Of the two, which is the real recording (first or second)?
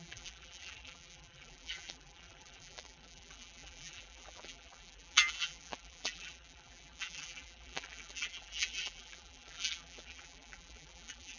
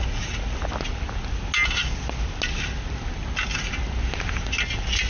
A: second